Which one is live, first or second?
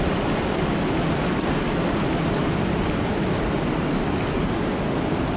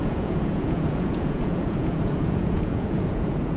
first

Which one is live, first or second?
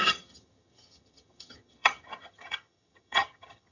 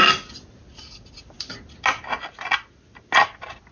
second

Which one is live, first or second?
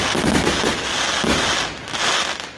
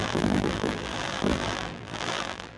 first